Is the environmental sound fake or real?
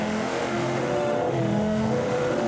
fake